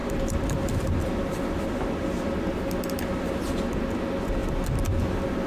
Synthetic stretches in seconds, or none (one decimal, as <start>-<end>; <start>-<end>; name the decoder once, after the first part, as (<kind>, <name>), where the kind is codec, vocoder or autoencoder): 0.0-3.3 (vocoder, BigVGAN v2); 4.4-5.5